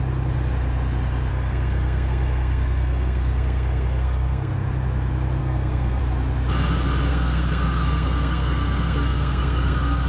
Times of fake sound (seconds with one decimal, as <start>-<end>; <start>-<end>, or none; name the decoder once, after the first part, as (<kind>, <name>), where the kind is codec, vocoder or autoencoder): 1.3-4.5 (codec, SNAC); 5.4-6.0; 7.1-10.1

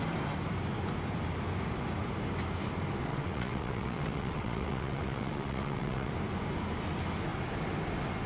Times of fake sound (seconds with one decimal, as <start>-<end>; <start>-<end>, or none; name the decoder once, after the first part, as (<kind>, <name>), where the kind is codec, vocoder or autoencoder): 3.1-6.1 (vocoder, WaveNeXt)

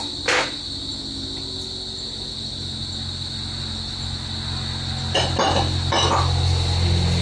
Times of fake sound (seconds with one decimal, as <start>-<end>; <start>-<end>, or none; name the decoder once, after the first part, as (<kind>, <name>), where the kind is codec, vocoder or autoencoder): none

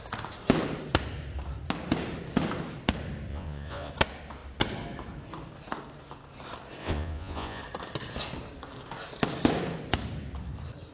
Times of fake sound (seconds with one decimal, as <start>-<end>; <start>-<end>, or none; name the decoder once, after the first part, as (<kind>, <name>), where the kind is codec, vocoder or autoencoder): 3.3-3.9 (vocoder, Vocos); 6.8-7.6